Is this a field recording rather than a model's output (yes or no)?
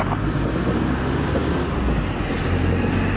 yes